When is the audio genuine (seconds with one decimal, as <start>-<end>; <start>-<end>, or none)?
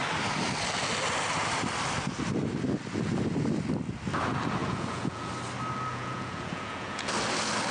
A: 0.0-4.6; 5.3-5.9; 7.1-7.7